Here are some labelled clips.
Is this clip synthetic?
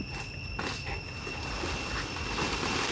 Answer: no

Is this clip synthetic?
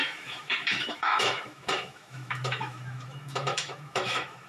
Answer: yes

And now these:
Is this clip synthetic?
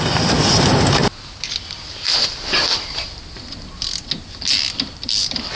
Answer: no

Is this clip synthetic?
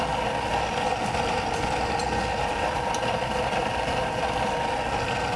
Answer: no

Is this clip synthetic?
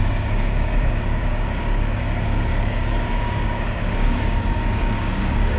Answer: yes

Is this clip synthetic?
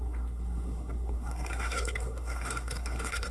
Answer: yes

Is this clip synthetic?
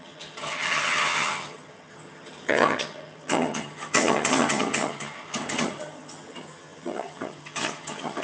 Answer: yes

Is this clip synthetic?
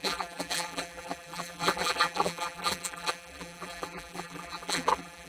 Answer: yes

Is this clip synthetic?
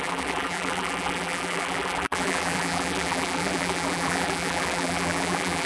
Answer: yes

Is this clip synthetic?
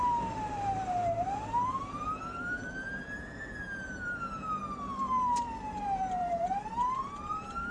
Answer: yes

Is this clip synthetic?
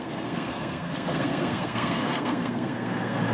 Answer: yes